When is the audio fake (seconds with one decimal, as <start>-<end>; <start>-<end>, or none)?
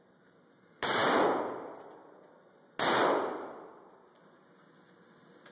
none